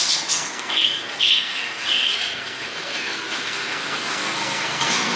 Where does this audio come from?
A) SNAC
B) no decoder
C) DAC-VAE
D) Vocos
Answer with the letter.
A